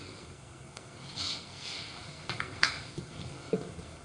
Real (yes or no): no